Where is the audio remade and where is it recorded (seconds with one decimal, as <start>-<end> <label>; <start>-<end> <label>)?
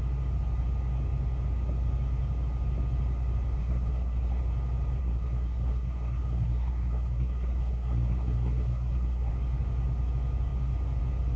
0.0-3.6 recorded; 3.6-4.4 remade; 4.4-5.0 recorded; 5.0-9.3 remade; 9.3-11.4 recorded